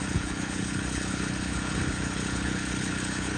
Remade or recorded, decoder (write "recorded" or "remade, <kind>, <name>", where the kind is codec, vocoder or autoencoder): remade, codec, HILCodec